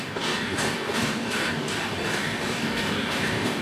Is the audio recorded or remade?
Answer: remade